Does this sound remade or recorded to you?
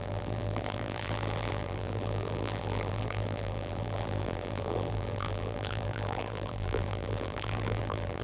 remade